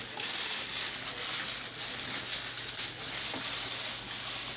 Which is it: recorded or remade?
recorded